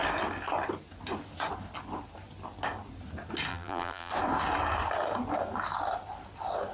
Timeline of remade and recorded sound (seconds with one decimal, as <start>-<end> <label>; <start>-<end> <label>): 0.0-3.5 recorded; 3.5-4.1 remade; 4.1-6.7 recorded